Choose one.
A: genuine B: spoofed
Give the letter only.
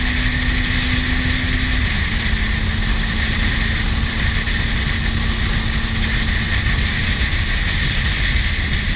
A